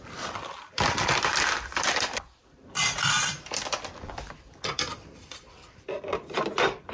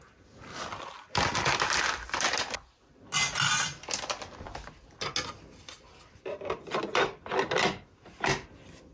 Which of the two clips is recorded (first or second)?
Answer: second